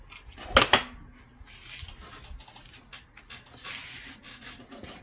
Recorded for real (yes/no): yes